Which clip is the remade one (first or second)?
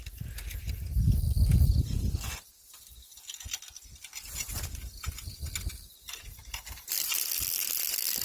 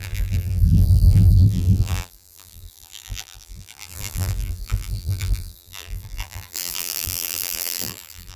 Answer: second